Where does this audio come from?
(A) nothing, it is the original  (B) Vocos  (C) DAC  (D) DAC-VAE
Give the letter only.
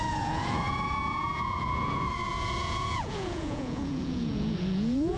B